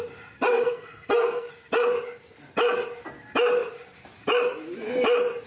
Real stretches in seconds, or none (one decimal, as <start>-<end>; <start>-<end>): 0.0-0.5; 1.5-5.5